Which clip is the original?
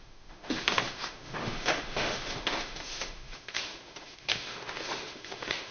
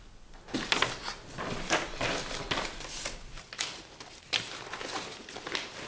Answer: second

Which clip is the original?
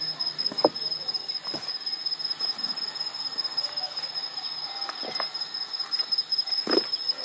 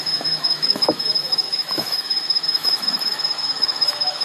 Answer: first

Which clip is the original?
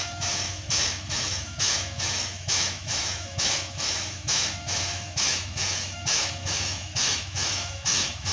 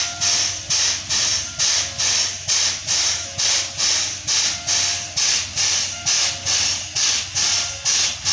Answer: second